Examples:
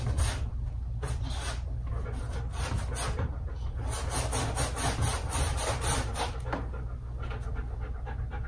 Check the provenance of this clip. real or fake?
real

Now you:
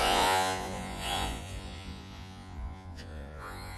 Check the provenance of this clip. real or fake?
fake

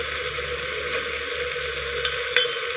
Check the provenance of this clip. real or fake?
real